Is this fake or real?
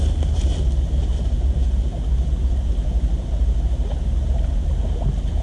real